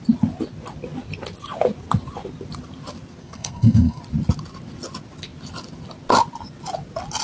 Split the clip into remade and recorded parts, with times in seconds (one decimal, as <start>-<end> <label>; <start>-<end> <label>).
0.0-3.2 recorded; 3.2-4.0 remade; 4.0-7.2 recorded